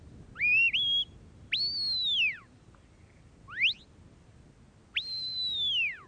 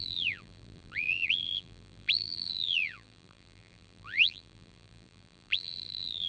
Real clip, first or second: first